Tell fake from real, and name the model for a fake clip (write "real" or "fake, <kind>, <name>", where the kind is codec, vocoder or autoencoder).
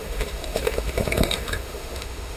fake, autoencoder, DAC-VAE